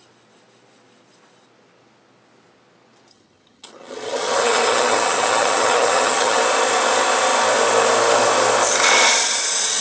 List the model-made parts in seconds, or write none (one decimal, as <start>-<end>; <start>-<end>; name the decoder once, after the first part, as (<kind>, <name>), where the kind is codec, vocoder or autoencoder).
3.1-6.4 (vocoder, HiFi-GAN)